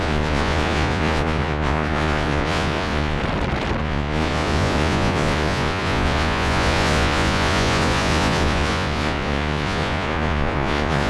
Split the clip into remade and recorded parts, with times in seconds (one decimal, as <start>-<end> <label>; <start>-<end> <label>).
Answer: 0.0-3.2 remade; 3.2-3.8 recorded; 3.8-11.1 remade